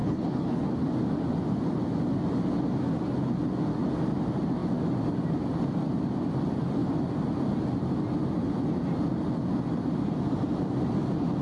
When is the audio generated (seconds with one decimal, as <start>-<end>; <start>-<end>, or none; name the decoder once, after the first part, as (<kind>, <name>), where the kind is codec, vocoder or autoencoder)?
0.0-0.6 (codec, HILCodec)